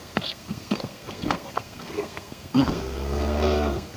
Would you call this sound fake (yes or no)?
yes